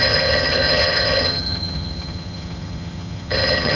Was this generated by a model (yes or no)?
yes